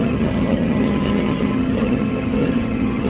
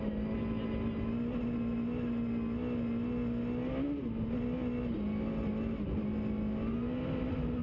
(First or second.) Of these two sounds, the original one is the second